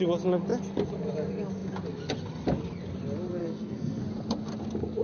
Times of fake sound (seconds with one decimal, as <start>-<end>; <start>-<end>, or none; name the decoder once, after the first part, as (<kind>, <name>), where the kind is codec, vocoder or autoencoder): 3.4-4.0 (codec, SNAC)